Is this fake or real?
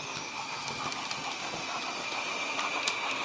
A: real